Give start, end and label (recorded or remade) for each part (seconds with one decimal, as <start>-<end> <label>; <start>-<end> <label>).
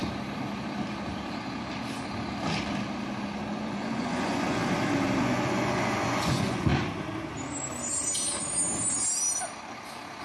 0.0-3.5 recorded; 3.5-4.6 remade; 4.6-5.2 recorded; 5.2-6.7 remade; 6.7-10.2 recorded